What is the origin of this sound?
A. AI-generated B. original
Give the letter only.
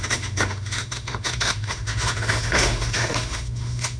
A